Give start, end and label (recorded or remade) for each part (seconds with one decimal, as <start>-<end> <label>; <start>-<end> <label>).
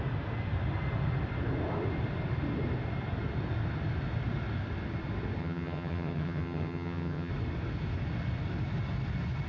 0.0-5.4 recorded; 5.4-7.3 remade; 7.3-9.5 recorded